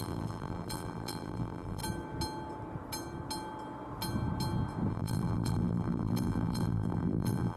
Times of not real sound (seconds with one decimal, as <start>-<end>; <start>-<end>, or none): 0.0-1.8; 4.9-7.6